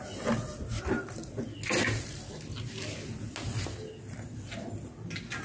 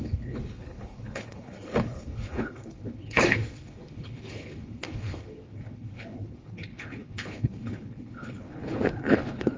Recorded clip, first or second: first